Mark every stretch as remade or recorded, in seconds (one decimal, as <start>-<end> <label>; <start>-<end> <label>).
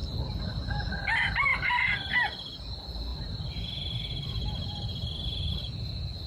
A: 0.0-1.5 recorded; 1.5-2.1 remade; 2.1-3.1 recorded; 3.1-5.4 remade; 5.4-6.3 recorded